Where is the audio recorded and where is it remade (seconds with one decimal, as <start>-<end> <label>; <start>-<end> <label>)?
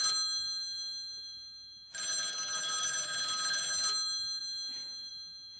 0.0-5.6 recorded